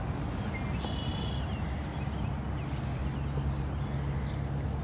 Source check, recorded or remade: recorded